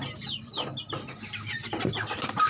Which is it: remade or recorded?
recorded